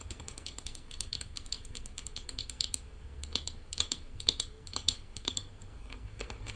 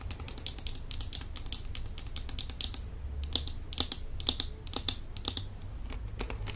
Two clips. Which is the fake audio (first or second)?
first